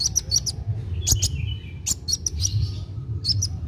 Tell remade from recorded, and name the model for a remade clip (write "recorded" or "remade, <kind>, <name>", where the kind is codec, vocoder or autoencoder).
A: recorded